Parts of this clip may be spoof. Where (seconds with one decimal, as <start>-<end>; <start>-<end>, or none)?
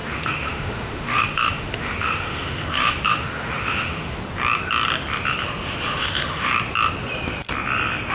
0.0-4.2; 6.0-6.5